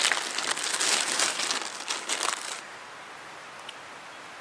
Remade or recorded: recorded